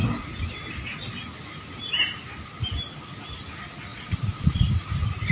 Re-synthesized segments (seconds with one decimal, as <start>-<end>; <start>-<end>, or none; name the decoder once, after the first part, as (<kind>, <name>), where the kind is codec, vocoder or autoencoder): 3.9-4.6 (vocoder, Vocos)